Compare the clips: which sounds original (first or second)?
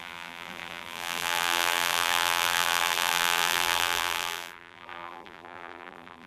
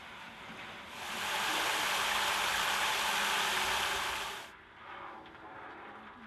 second